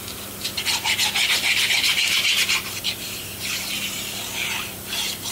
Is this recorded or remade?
remade